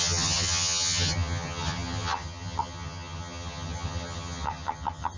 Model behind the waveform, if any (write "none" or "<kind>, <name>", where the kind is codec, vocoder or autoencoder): vocoder, HiFi-GAN